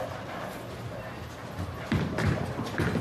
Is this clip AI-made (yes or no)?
no